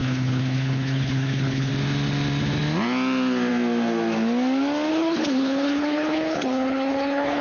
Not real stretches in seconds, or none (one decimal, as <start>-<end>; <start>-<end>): 0.0-1.7; 4.9-7.4